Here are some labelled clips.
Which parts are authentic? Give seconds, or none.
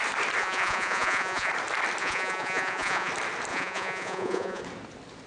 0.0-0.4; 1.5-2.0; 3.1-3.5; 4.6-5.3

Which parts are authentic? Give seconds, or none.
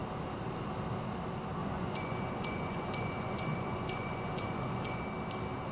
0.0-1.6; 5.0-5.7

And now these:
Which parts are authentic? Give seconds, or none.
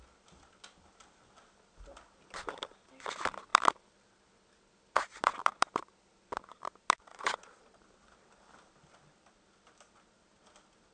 0.0-7.1; 7.8-10.9